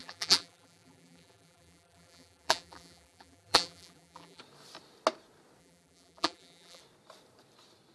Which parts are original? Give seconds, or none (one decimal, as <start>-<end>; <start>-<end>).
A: 4.4-5.6; 6.8-7.9